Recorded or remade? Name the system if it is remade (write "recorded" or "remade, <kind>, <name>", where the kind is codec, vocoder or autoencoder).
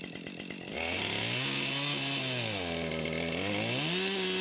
recorded